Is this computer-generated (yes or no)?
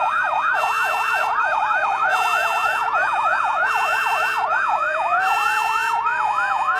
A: yes